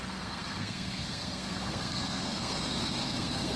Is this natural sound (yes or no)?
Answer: no